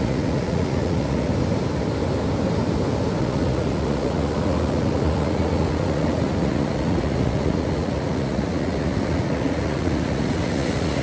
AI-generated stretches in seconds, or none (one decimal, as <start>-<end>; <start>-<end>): 0.0-1.3; 3.2-11.0